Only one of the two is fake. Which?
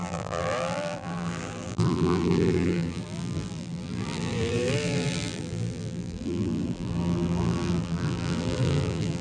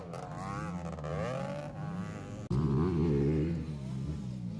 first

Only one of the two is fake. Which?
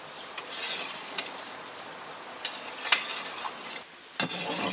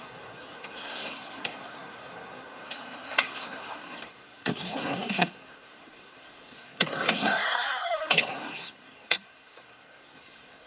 second